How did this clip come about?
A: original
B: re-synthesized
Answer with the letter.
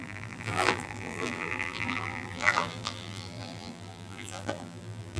B